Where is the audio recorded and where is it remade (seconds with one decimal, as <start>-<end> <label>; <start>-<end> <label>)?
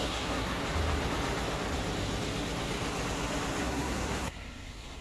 0.0-0.6 remade; 0.6-3.6 recorded; 3.6-5.0 remade